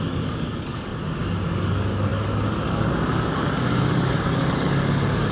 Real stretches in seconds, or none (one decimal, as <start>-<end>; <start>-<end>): 0.9-1.5